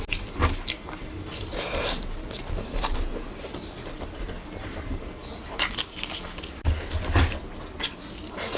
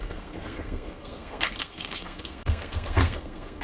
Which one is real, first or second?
first